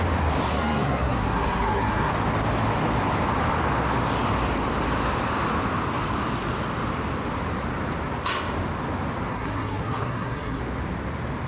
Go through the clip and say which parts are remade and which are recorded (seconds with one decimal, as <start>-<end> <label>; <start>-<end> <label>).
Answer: 0.0-0.5 recorded; 0.5-2.1 remade; 2.1-9.3 recorded; 9.3-10.6 remade; 10.6-11.5 recorded